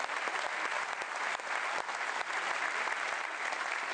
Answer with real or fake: real